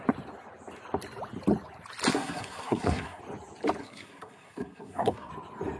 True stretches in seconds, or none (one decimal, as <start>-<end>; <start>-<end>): 0.0-2.1; 3.2-3.8; 5.3-5.8